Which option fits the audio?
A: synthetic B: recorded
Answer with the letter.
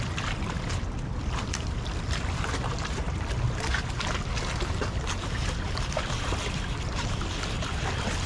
B